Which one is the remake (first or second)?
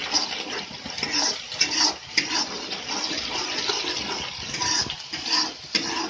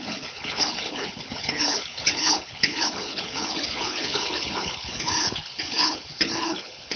second